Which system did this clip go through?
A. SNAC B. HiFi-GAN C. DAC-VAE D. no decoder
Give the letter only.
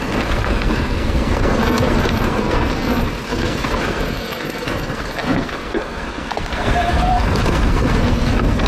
A